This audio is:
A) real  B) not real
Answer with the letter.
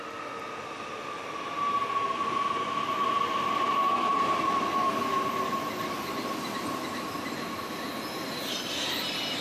A